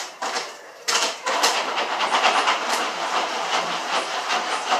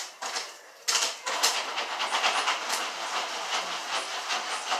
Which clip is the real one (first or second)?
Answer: second